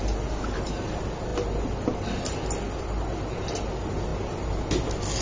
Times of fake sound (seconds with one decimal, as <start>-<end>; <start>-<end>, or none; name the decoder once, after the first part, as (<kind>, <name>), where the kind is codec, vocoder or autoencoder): none